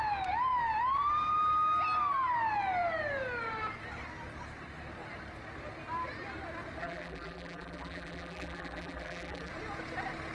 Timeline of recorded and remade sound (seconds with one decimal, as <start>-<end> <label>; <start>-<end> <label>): 0.0-6.8 recorded; 6.8-9.5 remade; 9.5-10.3 recorded